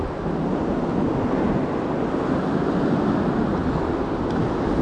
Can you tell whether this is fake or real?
real